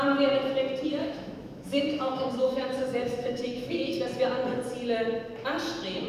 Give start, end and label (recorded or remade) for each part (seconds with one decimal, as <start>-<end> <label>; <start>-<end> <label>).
0.0-1.0 recorded; 1.0-4.0 remade; 4.0-6.1 recorded